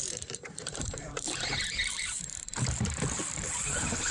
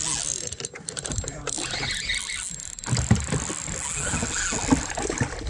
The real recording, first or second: second